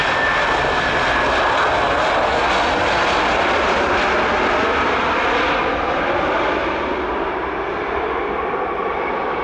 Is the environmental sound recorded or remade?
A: recorded